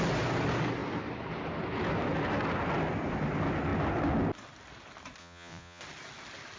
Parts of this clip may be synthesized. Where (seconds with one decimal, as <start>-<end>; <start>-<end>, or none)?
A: 5.2-5.8